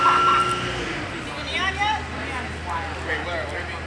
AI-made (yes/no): no